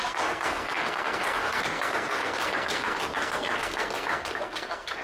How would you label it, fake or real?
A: fake